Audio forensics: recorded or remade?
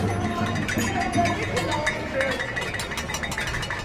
recorded